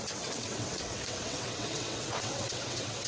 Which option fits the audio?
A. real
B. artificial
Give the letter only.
B